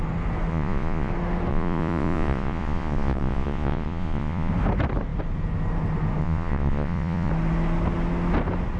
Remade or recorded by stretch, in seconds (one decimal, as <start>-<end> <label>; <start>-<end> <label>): 0.0-0.5 recorded; 0.5-1.1 remade; 1.1-1.5 recorded; 1.5-4.5 remade; 4.5-6.2 recorded; 6.2-7.3 remade; 7.3-8.8 recorded